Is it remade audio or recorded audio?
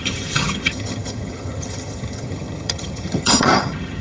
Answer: remade